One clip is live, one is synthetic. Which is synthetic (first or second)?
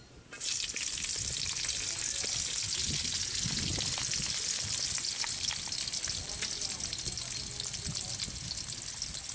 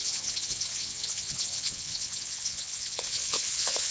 second